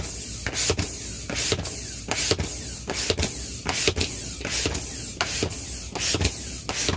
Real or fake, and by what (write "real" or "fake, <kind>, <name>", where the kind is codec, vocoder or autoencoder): real